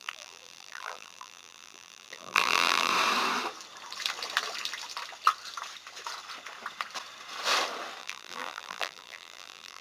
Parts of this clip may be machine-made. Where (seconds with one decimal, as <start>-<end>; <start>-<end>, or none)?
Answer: 0.0-2.9; 8.0-9.8